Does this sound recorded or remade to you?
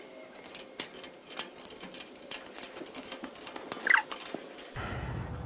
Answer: recorded